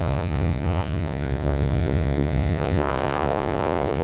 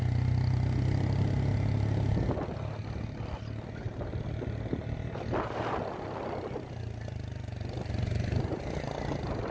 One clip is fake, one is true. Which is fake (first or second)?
first